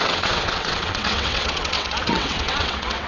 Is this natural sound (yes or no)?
no